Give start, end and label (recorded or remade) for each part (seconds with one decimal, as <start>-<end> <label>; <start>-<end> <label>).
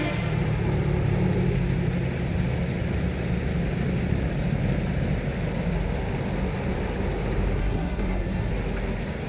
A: 0.0-7.6 recorded; 7.6-8.5 remade; 8.5-9.3 recorded